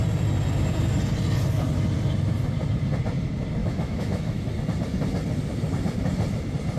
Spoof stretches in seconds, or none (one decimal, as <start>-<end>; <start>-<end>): 3.6-4.5